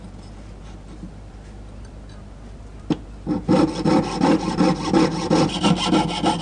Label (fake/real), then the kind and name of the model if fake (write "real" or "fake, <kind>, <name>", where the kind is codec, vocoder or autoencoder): real